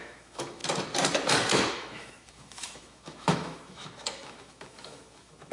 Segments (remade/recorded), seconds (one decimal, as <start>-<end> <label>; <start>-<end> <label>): 0.0-0.6 remade; 0.6-1.7 recorded; 1.7-5.5 remade